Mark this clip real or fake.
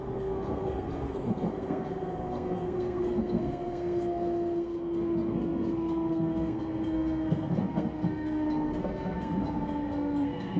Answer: fake